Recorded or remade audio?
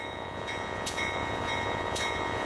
remade